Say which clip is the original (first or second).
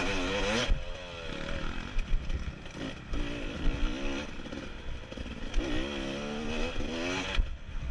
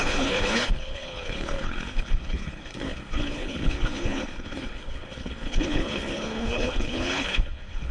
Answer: first